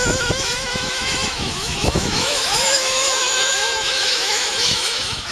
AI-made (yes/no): yes